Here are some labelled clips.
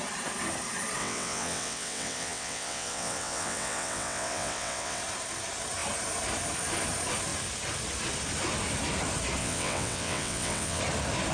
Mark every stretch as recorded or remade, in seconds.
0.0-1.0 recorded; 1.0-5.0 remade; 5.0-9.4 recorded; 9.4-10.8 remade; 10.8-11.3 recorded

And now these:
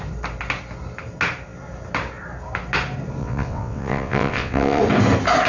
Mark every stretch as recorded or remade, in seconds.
0.0-3.2 recorded; 3.2-4.8 remade; 4.8-5.5 recorded

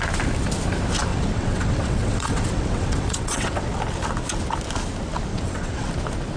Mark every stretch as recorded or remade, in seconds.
0.0-1.1 recorded; 1.1-3.7 remade; 3.7-5.3 recorded; 5.3-5.9 remade; 5.9-6.4 recorded

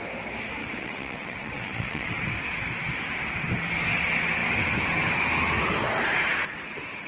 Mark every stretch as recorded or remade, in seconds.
0.0-0.6 recorded; 0.6-2.2 remade; 2.2-7.1 recorded

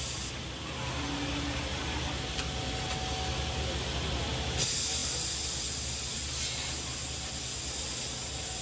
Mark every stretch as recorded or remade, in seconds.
0.0-8.6 recorded

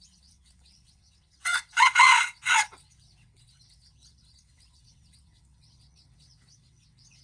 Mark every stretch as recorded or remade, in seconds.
0.0-7.2 remade